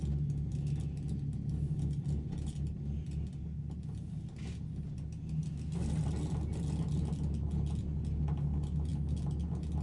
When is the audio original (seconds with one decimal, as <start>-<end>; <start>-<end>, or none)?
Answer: 0.0-9.8